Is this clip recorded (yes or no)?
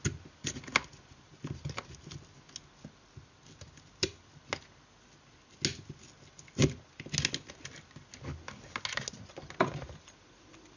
yes